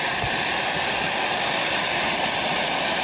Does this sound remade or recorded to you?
recorded